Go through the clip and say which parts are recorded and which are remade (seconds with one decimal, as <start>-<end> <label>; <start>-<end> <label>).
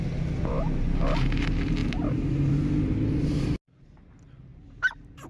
0.0-4.5 recorded; 4.5-5.3 remade